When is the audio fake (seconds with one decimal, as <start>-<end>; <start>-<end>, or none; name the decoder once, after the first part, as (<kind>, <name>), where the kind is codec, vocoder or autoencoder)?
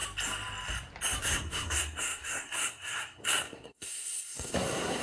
1.2-5.0 (codec, SNAC)